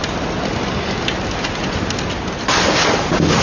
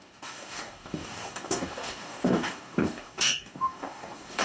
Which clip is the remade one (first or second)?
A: second